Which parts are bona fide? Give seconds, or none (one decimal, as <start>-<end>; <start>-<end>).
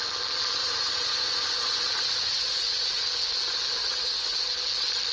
0.0-0.6; 3.0-3.8; 4.4-5.1